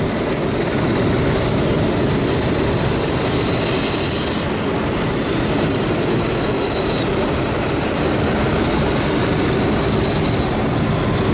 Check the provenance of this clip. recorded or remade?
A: recorded